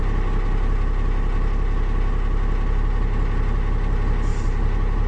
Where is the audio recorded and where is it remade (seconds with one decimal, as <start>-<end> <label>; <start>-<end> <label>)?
0.0-4.3 recorded; 4.3-5.1 remade